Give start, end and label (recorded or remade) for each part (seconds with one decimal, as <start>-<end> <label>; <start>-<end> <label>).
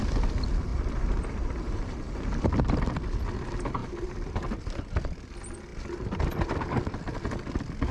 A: 0.0-0.7 recorded; 0.7-2.5 remade; 2.5-3.8 recorded; 3.8-4.6 remade; 4.6-7.9 recorded